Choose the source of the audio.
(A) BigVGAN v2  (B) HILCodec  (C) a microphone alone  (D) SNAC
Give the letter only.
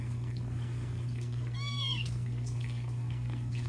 D